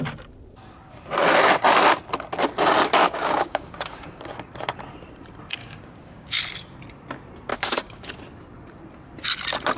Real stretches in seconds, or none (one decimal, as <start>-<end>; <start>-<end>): 0.0-3.0; 4.3-5.6; 6.4-7.5; 8.1-9.8